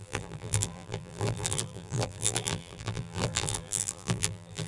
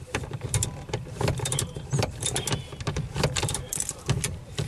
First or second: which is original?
second